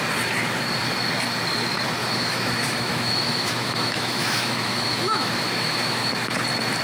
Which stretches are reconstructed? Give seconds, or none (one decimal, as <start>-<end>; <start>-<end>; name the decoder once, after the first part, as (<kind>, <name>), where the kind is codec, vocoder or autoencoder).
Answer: 2.0-6.1 (autoencoder, DAC-VAE)